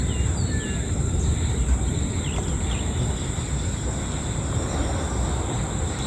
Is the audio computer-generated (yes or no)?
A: no